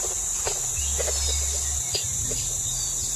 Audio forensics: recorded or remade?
recorded